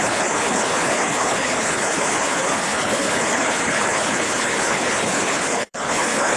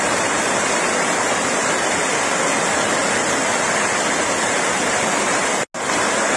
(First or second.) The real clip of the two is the second